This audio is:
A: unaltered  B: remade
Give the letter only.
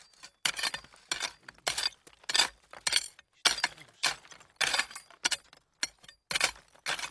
A